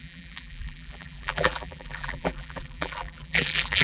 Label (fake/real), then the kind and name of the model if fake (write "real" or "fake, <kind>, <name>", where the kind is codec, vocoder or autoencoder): fake, vocoder, BigVGAN v2